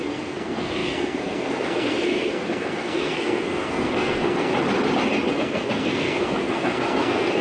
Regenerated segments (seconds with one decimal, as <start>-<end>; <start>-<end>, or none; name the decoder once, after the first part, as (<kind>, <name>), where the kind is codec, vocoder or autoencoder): 0.0-4.5 (codec, SNAC); 5.3-7.4